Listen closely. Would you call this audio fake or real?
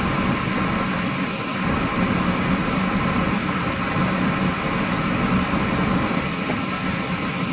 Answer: real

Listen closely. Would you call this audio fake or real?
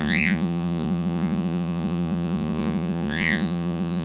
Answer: fake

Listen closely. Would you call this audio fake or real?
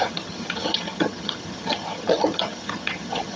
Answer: fake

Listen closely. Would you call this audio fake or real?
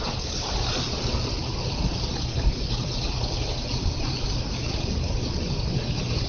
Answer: real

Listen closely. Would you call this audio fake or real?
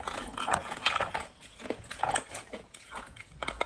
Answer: fake